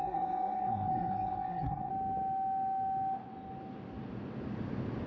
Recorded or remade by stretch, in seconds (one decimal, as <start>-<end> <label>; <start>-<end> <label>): 0.0-1.9 remade; 1.9-5.1 recorded